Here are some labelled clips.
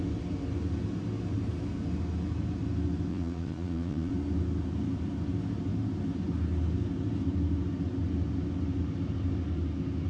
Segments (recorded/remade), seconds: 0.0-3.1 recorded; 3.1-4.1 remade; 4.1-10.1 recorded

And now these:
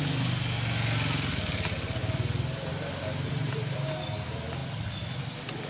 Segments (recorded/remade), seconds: 0.0-2.0 recorded; 2.0-3.9 remade; 3.9-5.7 recorded